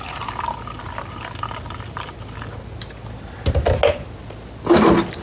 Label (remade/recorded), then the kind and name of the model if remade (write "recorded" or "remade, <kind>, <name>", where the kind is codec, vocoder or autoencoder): recorded